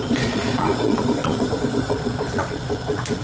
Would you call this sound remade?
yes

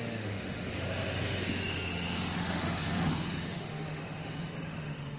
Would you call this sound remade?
yes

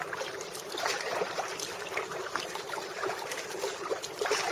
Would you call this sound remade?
yes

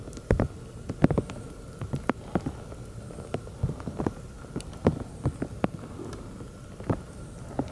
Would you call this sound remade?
no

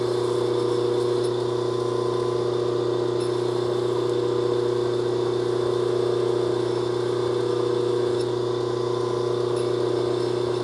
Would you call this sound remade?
no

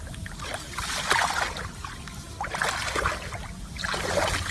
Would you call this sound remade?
no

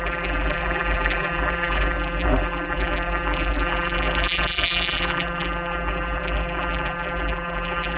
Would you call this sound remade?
yes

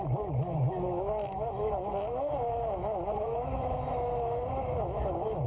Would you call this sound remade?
yes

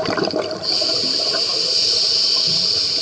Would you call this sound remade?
no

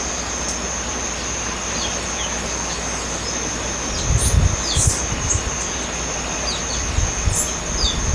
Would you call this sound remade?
no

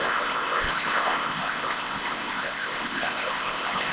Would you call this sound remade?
yes